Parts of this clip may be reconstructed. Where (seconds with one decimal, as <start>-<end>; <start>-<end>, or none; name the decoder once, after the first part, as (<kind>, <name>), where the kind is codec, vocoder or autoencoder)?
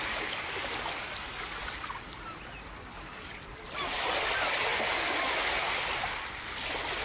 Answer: 0.0-1.6 (vocoder, BigVGAN v2); 2.9-4.7